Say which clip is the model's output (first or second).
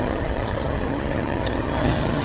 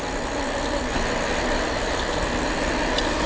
first